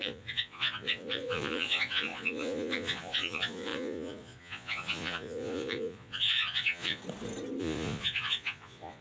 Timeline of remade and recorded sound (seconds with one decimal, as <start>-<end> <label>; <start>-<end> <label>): 0.0-7.0 remade; 7.0-7.6 recorded; 7.6-9.0 remade